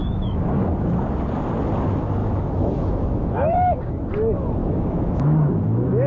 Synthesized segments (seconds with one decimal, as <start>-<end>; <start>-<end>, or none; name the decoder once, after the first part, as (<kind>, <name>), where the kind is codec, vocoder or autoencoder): 0.0-0.5 (autoencoder, DAC-VAE); 2.2-3.8; 4.6-6.1